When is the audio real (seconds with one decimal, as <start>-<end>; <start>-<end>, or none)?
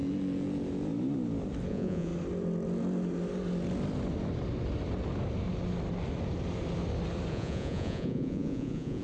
0.0-1.7; 2.1-7.3